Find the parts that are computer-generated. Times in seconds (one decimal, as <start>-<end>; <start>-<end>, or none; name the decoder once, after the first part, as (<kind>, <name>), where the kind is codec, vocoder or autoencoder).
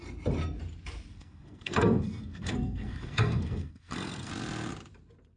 1.1-4.3 (codec, SNAC)